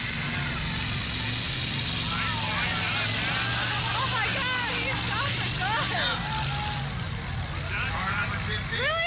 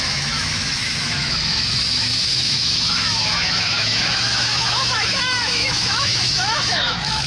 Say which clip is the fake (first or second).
second